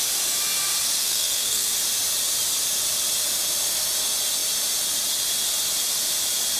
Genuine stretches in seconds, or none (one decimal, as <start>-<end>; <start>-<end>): 0.0-1.0; 1.7-6.6